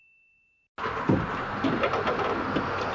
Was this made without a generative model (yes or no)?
yes